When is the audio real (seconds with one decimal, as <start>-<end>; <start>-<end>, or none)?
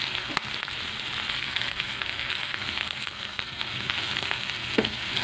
0.5-1.3